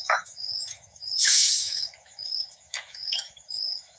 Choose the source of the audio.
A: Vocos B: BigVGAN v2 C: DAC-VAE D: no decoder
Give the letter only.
C